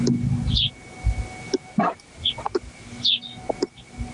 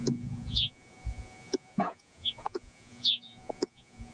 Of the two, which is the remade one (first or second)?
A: second